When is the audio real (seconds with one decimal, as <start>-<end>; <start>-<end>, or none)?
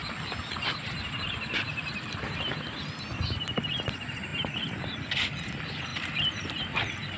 0.0-4.3; 5.3-7.2